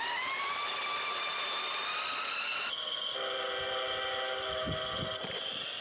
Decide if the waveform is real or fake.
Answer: real